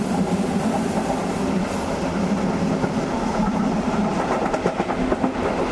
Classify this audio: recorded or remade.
recorded